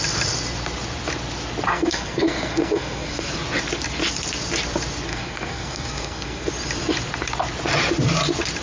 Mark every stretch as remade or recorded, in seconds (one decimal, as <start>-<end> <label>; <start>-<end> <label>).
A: 0.0-1.7 recorded; 1.7-3.3 remade; 3.3-5.1 recorded; 5.1-6.5 remade; 6.5-8.6 recorded